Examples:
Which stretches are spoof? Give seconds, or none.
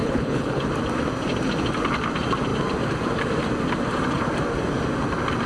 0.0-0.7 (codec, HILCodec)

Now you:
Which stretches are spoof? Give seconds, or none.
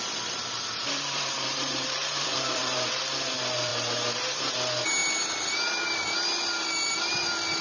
0.9-3.0 (vocoder, BigVGAN v2); 3.7-4.5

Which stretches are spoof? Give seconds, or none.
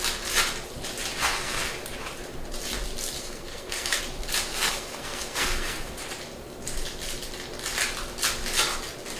1.2-1.7 (codec, SNAC); 3.2-4.0; 4.5-5.9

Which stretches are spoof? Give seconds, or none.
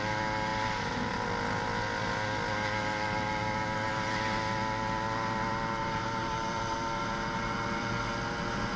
5.8-7.0 (vocoder, BigVGAN v2)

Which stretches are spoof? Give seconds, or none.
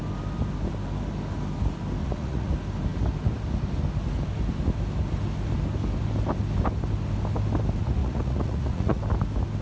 2.0-2.5 (vocoder, Vocos); 8.0-9.0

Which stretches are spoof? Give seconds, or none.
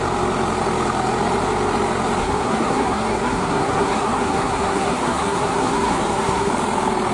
2.2-6.5 (codec, SNAC)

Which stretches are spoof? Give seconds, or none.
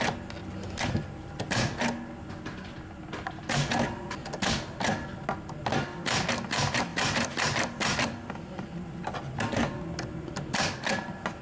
0.4-1.8 (vocoder, BigVGAN v2); 6.9-8.9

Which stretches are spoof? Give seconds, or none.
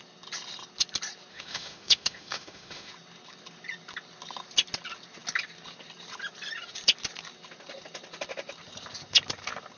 1.3-2.9 (autoencoder, DAC-VAE)